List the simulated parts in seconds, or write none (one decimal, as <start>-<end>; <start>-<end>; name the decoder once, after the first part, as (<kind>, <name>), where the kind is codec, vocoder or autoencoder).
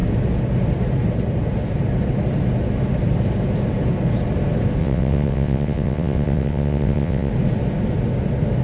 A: 4.8-7.3 (vocoder, WaveNeXt)